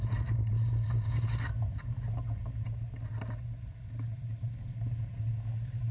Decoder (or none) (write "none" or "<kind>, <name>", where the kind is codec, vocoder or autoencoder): none